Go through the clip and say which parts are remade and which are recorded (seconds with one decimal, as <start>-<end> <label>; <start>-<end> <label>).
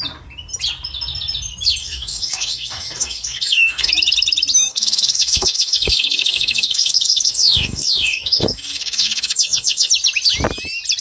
0.0-1.8 recorded; 1.8-3.9 remade; 3.9-4.7 recorded; 4.7-9.9 remade; 9.9-11.0 recorded